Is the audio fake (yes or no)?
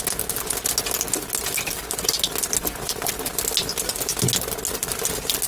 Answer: no